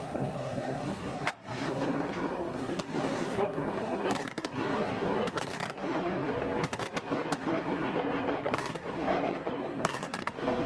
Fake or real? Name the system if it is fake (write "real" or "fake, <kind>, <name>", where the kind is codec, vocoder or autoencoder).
fake, codec, SNAC